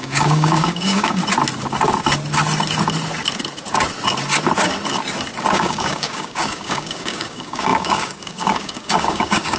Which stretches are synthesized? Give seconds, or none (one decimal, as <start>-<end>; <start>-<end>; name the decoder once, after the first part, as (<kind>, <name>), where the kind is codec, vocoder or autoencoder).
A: 0.0-1.2 (codec, DAC); 5.5-9.6